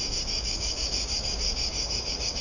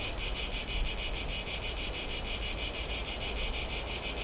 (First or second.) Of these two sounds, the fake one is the first